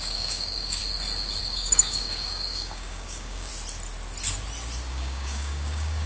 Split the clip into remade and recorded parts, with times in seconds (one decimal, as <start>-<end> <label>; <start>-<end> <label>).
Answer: 0.0-0.8 remade; 0.8-1.4 recorded; 1.4-3.5 remade; 3.5-4.9 recorded; 4.9-6.1 remade